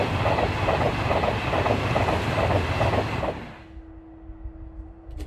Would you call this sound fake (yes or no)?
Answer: no